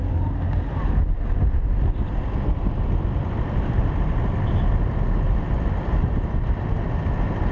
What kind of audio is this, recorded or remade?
recorded